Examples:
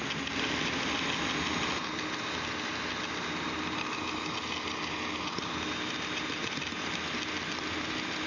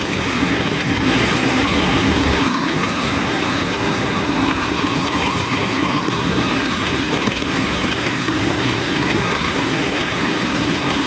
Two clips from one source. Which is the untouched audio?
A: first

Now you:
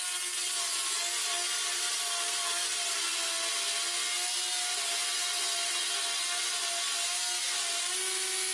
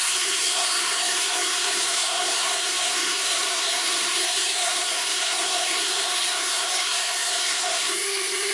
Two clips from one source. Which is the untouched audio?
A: first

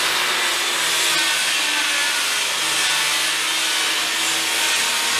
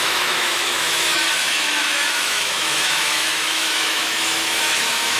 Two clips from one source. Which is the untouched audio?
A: first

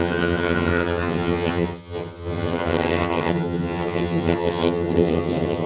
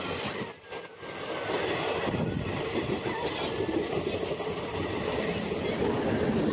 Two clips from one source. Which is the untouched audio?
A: second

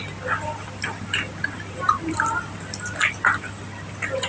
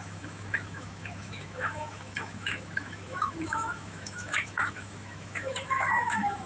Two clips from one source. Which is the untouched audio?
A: first